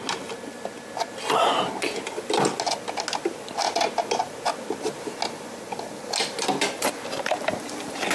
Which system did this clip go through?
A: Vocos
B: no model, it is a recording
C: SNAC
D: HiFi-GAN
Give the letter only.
B